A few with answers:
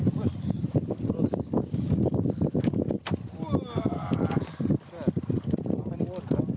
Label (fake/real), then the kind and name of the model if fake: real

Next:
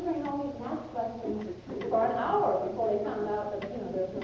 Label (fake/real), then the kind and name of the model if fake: real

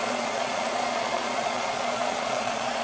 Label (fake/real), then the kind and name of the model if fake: fake, vocoder, Vocos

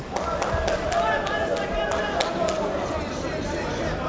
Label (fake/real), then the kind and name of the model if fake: real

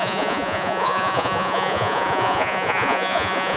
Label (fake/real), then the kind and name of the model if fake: fake, vocoder, Vocos